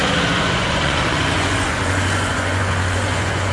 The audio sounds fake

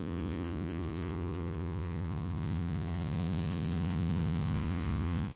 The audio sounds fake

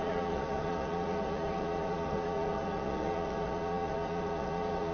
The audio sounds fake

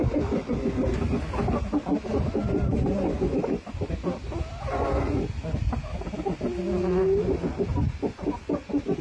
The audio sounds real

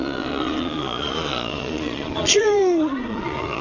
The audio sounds fake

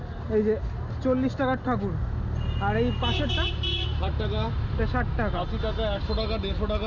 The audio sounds real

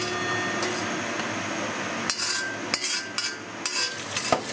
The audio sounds real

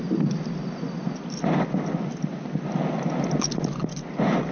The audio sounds real